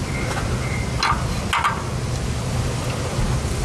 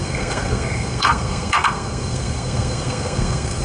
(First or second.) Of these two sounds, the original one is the first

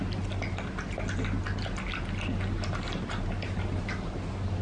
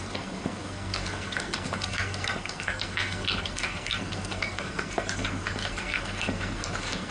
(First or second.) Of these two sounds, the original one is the first